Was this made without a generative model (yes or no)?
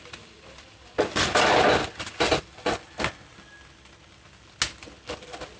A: yes